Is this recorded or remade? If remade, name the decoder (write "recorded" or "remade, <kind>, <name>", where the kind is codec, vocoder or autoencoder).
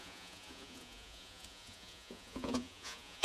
remade, vocoder, Vocos